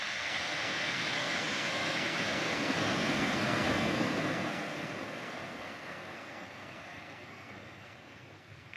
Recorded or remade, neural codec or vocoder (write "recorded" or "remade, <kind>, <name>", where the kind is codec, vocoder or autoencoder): remade, codec, SNAC